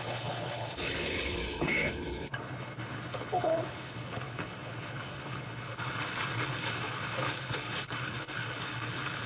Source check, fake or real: fake